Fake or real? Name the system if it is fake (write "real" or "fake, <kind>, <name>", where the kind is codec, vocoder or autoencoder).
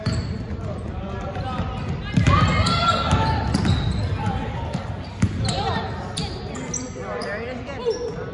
real